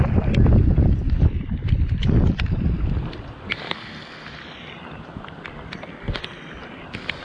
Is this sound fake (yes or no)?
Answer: yes